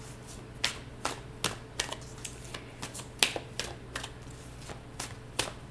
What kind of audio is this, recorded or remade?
recorded